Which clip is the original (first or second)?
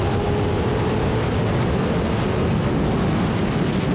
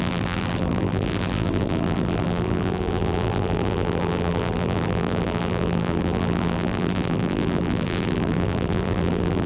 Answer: first